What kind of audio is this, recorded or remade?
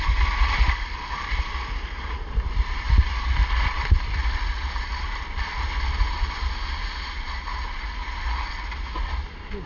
recorded